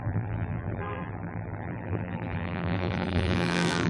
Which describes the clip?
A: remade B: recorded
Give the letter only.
A